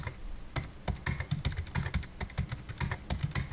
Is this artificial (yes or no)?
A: no